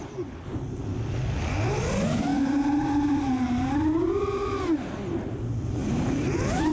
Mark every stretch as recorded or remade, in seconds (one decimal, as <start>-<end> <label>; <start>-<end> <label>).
0.0-2.3 recorded; 2.3-4.6 remade; 4.6-5.8 recorded; 5.8-6.7 remade